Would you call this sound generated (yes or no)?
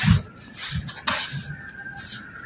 no